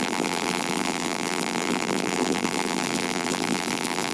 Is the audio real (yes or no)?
no